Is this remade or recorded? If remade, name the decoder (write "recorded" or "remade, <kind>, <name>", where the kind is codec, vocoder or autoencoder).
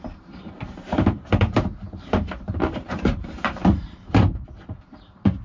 remade, vocoder, BigVGAN v2